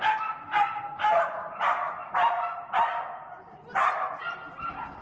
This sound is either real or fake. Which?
real